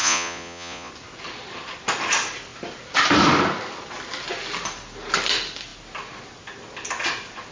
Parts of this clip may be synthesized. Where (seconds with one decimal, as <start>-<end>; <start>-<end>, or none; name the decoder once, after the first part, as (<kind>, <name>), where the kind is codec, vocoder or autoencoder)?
0.0-0.9 (vocoder, Vocos)